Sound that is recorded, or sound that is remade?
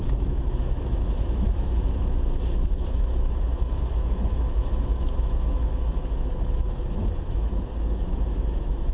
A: remade